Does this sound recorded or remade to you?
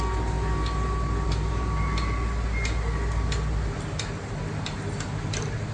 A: recorded